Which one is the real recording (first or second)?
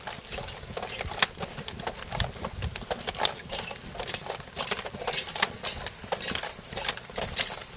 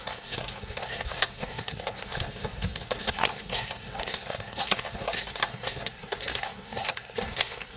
first